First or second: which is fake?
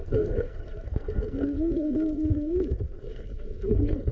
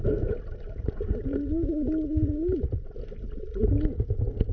first